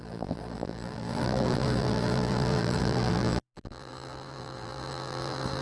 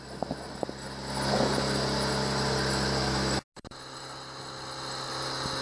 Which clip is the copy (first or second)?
first